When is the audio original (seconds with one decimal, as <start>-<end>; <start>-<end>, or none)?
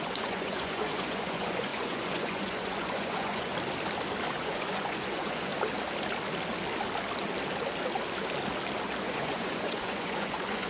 3.5-4.4; 5.5-9.0